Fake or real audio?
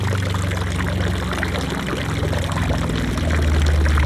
real